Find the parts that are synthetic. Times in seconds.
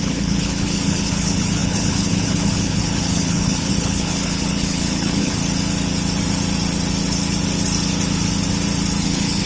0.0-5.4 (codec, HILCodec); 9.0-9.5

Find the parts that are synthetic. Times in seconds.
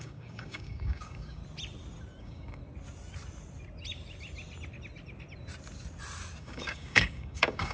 0.0-1.4 (codec, DAC); 2.2-2.6; 6.4-7.7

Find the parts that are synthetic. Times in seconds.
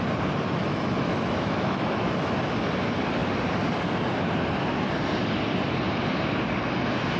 0.6-2.4 (autoencoder, DAC-VAE)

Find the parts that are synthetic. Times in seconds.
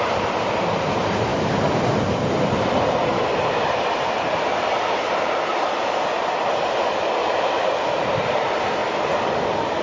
0.0-5.5 (vocoder, BigVGAN v2); 8.1-8.8; 9.4-9.8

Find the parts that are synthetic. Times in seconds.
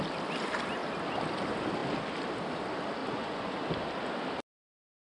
3.0-3.5 (vocoder, Vocos)